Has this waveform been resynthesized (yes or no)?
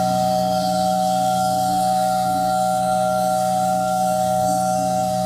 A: yes